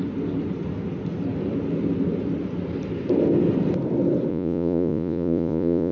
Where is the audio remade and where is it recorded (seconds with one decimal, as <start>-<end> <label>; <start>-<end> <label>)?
0.0-4.3 recorded; 4.3-5.9 remade